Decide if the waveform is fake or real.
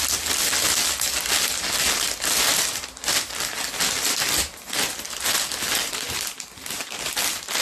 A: real